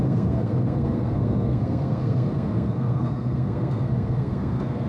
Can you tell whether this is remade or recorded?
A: remade